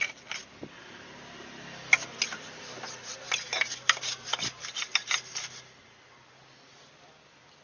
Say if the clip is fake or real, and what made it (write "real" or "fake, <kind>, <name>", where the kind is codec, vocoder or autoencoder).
real